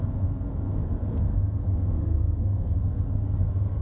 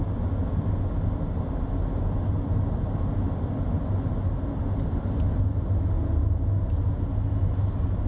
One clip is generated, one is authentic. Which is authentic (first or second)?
second